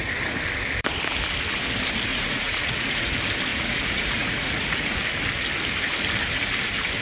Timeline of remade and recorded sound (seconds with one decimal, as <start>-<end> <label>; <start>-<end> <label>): 0.0-2.1 recorded; 2.1-3.1 remade; 3.1-3.5 recorded; 3.5-5.0 remade; 5.0-7.0 recorded